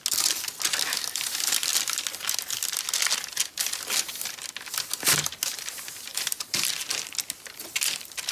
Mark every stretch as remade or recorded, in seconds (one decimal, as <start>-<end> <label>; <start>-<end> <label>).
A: 0.0-6.1 recorded; 6.1-6.7 remade; 6.7-8.3 recorded